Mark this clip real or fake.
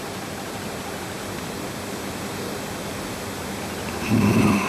real